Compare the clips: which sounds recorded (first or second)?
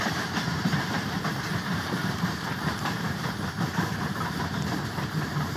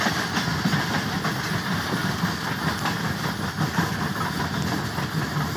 second